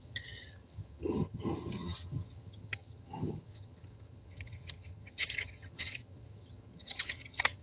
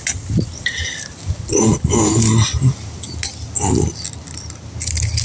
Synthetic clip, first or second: first